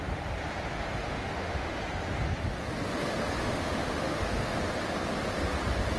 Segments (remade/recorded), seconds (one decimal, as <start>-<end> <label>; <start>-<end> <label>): 0.0-1.0 recorded; 1.0-1.8 remade; 1.8-3.4 recorded; 3.4-4.6 remade; 4.6-6.0 recorded